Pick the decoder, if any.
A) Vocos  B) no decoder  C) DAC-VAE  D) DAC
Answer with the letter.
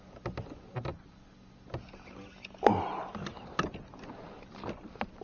B